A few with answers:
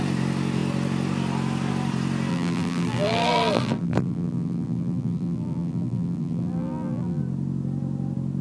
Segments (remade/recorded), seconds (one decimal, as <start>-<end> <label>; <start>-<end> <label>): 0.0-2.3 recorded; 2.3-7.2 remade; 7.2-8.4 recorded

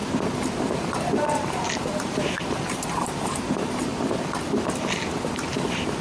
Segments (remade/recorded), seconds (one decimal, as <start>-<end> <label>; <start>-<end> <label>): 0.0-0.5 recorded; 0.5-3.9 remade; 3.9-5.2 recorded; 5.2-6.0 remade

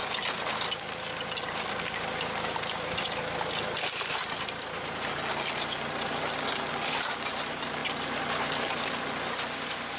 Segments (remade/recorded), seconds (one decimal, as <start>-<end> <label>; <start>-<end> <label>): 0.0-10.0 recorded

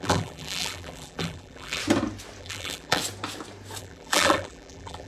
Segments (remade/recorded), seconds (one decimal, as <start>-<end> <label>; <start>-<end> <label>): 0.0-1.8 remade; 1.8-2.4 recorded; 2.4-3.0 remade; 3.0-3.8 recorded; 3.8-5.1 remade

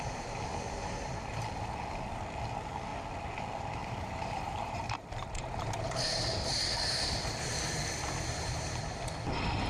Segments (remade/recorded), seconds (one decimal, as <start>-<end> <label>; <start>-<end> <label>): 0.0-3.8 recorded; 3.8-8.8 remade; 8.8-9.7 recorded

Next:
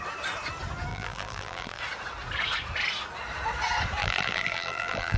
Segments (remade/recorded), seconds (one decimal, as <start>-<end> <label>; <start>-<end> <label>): 0.0-0.9 recorded; 0.9-1.8 remade; 1.8-4.0 recorded; 4.0-5.2 remade

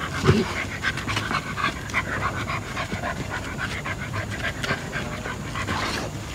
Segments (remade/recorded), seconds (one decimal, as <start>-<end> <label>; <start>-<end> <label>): 0.0-1.6 recorded; 1.6-4.5 remade; 4.5-6.3 recorded

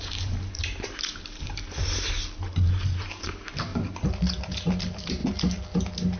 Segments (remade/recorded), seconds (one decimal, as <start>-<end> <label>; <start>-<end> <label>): 0.0-1.8 remade; 1.8-2.5 recorded; 2.5-3.7 remade; 3.7-4.8 recorded; 4.8-5.2 remade; 5.2-6.2 recorded